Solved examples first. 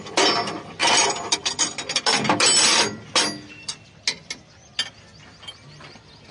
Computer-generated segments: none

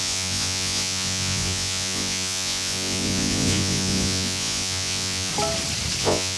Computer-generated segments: 0.0-5.3; 6.0-6.4

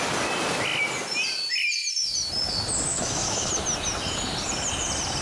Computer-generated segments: 2.9-3.5

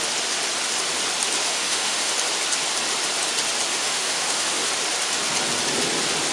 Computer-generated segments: 1.4-2.1; 3.7-4.7